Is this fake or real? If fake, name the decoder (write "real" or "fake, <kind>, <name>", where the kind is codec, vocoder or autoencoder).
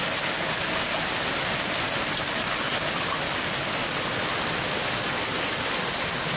real